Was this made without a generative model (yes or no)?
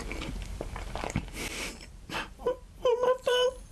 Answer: no